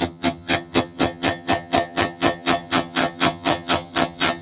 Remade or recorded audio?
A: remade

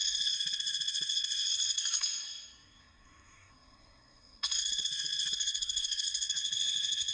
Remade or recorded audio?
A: remade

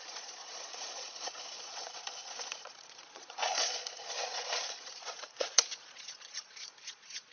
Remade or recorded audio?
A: remade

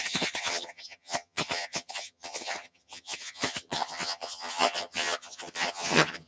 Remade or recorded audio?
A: remade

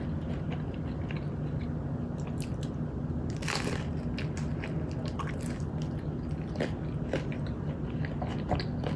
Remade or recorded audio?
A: recorded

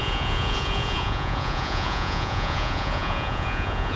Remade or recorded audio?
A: remade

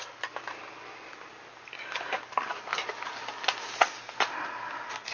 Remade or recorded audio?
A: recorded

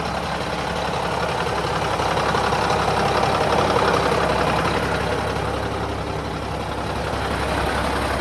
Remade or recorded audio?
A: recorded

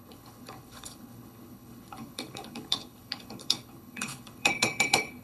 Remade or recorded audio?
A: remade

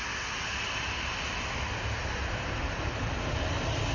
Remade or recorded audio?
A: recorded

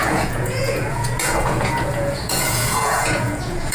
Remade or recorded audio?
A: remade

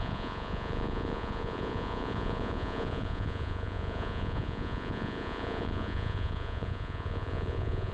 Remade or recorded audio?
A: remade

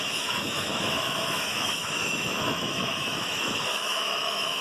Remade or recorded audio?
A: remade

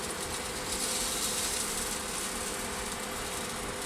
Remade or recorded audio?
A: recorded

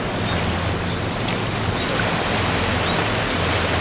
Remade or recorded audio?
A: recorded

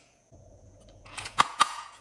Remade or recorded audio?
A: remade